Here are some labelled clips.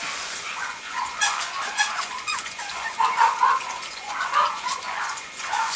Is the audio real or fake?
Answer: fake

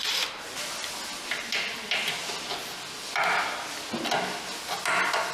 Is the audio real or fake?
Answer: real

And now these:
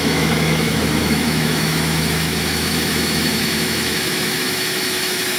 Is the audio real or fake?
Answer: fake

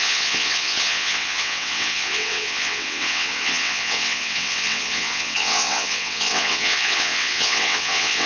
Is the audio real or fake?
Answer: fake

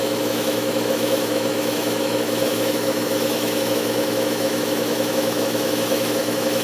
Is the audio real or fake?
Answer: fake